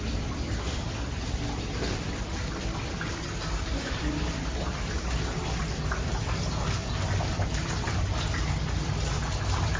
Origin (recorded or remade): remade